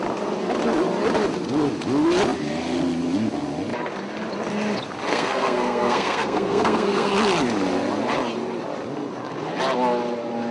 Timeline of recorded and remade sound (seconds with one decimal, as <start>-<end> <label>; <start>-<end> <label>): 0.0-5.1 recorded; 5.1-7.1 remade; 7.1-10.5 recorded